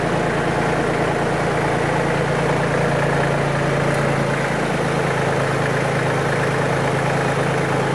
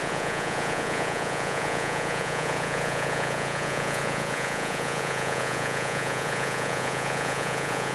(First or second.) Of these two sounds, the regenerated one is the second